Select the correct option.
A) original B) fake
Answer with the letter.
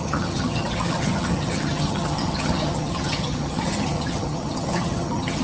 B